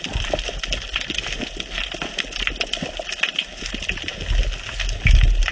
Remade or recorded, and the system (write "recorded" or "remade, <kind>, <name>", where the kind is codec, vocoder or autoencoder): recorded